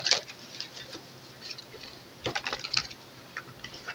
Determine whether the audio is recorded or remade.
recorded